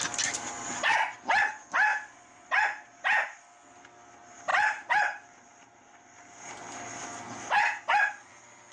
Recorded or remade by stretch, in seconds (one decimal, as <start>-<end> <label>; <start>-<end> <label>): 0.0-1.9 recorded; 1.9-3.4 remade; 3.4-4.5 recorded; 4.5-6.6 remade; 6.6-8.7 recorded